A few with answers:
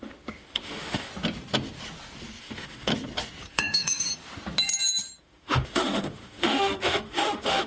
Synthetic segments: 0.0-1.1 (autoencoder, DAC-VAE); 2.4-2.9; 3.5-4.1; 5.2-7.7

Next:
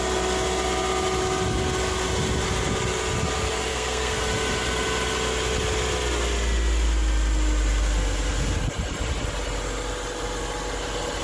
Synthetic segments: 3.7-4.2 (codec, SNAC)